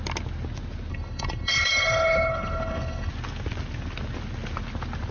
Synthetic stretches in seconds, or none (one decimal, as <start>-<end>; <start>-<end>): 0.9-3.1